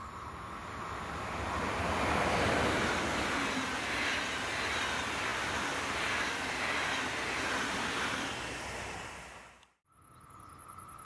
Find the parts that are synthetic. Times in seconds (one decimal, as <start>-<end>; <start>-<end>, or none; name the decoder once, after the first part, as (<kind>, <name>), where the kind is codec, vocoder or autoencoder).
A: none